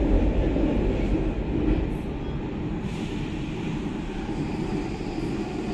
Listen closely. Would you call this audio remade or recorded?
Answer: recorded